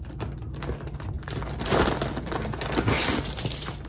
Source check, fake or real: real